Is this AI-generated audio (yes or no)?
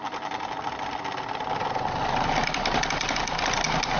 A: no